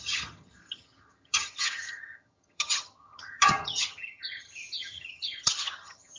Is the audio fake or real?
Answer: fake